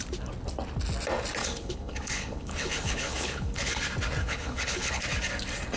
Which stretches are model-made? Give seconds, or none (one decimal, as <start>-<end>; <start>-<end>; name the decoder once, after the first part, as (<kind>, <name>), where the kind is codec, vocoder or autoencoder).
1.4-3.8 (codec, HILCodec); 4.2-5.0